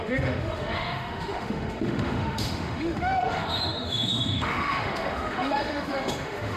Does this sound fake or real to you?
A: fake